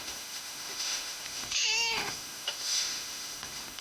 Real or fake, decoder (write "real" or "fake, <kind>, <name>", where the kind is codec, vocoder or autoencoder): fake, autoencoder, DAC-VAE